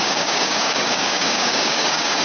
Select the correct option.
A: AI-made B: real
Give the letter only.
A